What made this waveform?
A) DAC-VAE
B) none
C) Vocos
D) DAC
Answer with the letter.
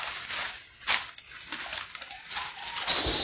B